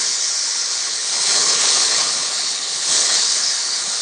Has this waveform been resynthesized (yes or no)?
yes